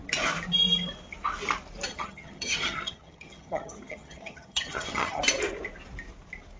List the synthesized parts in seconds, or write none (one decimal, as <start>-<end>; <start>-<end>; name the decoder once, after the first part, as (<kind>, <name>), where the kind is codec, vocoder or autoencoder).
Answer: 1.9-5.2 (vocoder, HiFi-GAN)